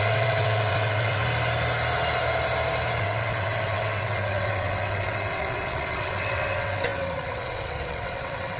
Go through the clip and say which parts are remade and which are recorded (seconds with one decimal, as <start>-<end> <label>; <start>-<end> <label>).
0.0-1.2 remade; 1.2-3.0 recorded; 3.0-8.6 remade